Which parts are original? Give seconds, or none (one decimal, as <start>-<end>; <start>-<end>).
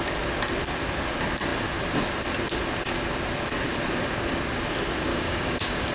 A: 0.0-5.1